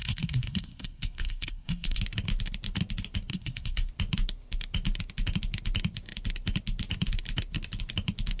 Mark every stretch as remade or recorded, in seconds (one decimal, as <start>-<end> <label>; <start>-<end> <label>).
0.0-2.0 remade; 2.0-3.3 recorded; 3.3-3.9 remade; 3.9-8.4 recorded